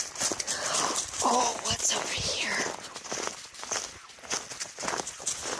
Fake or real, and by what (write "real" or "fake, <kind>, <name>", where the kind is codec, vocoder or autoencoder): real